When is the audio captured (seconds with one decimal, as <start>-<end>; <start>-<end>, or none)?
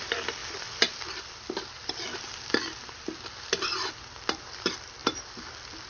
0.0-0.4; 3.9-5.9